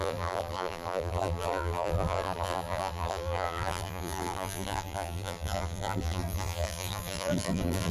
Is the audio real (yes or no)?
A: no